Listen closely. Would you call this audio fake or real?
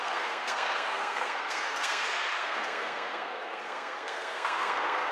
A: fake